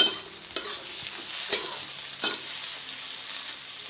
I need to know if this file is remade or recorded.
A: recorded